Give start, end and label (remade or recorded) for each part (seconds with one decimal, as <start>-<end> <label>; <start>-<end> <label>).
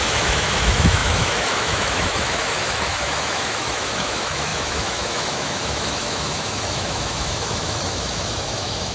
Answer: 0.0-8.9 remade